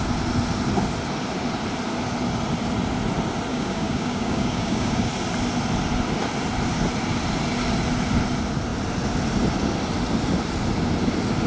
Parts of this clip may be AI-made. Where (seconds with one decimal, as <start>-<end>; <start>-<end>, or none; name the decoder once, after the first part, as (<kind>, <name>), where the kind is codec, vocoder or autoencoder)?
3.5-5.1 (codec, DAC)